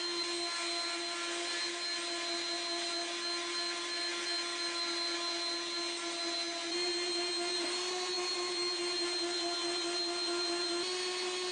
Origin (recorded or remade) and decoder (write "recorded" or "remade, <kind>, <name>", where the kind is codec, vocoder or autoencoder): recorded